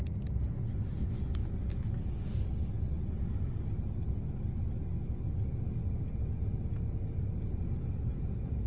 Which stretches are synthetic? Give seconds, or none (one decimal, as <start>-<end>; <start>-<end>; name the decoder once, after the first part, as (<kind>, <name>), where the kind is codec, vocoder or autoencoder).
8.1-8.7 (vocoder, Vocos)